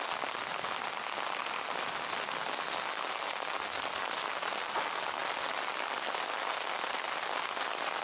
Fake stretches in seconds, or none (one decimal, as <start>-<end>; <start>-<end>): none